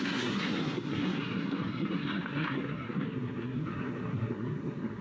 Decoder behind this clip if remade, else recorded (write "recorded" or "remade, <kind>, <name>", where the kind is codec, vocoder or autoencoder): remade, codec, SNAC